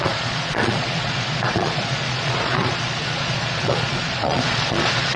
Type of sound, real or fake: fake